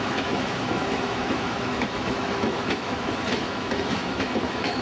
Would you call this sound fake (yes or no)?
yes